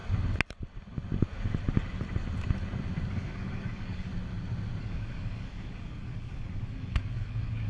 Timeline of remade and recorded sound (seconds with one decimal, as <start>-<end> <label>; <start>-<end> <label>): 0.0-3.1 recorded; 3.1-4.1 remade; 4.1-4.8 recorded; 4.8-7.7 remade